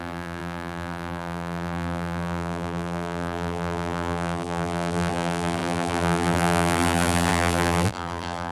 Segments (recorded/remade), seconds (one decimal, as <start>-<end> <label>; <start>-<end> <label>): 0.0-8.5 remade